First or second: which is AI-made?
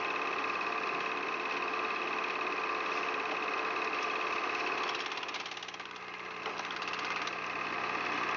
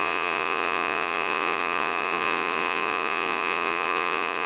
second